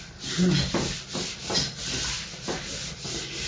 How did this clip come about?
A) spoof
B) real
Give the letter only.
B